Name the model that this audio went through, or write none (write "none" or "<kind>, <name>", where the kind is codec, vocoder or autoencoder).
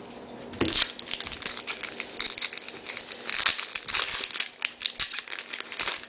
none